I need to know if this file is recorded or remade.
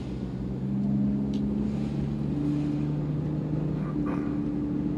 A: recorded